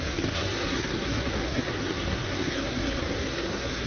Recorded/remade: remade